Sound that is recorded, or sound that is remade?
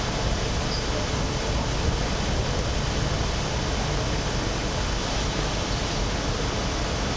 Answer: recorded